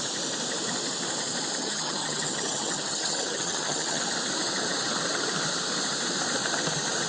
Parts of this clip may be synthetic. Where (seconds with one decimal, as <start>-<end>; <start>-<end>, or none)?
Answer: 1.6-4.0